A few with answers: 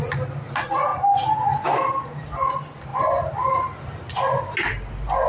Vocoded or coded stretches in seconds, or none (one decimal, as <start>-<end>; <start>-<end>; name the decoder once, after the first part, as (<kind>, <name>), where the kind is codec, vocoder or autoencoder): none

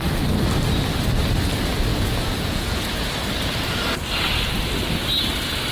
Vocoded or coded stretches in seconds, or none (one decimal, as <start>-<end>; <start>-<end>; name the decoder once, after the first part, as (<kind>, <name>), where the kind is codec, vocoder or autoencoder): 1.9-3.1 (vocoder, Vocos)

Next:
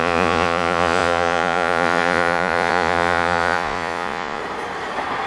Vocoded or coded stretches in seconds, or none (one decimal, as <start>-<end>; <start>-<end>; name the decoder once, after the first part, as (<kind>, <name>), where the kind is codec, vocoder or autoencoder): 0.0-4.4 (vocoder, Vocos)

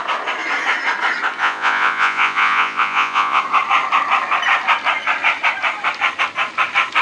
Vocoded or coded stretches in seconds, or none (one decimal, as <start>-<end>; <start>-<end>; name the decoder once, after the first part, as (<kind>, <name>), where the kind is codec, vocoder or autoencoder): 1.4-3.4 (vocoder, Vocos)

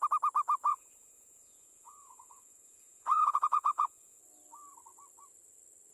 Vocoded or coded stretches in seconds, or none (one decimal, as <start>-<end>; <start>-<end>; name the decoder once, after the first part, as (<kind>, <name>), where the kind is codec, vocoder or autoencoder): 0.7-4.2 (vocoder, Vocos)

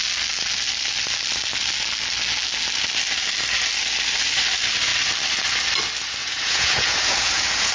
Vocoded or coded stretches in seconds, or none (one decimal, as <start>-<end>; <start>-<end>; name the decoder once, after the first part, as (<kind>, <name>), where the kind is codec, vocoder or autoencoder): 6.2-7.7 (vocoder, Vocos)